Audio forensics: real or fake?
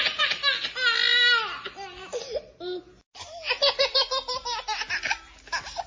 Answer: real